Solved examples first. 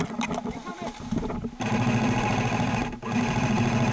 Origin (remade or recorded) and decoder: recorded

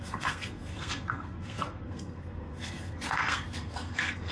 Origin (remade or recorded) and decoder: remade, codec, SNAC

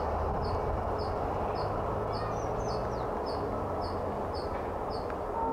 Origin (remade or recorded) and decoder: recorded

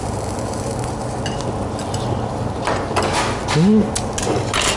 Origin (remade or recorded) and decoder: recorded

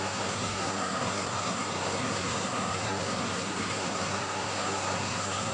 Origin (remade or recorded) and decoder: remade, codec, SNAC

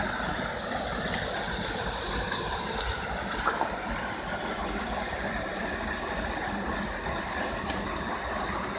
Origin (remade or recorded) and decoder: recorded